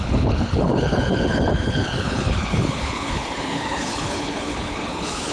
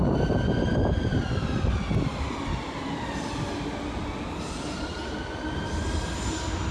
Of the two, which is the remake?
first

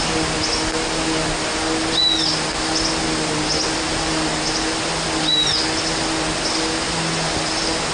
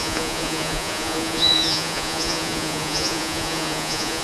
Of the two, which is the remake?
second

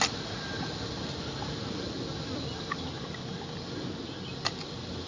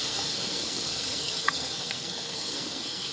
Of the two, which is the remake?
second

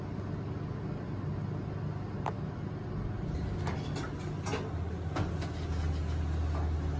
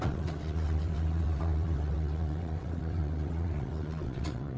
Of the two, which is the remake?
second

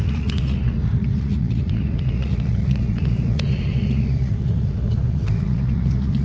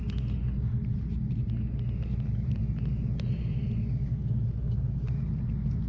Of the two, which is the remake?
first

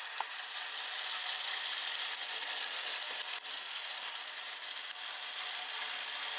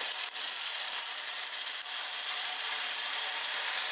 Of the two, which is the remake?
second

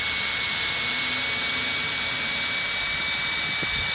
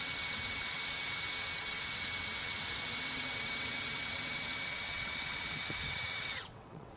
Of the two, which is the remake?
second